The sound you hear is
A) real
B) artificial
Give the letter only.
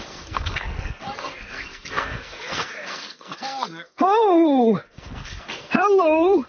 B